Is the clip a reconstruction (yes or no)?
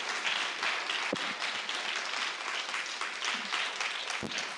no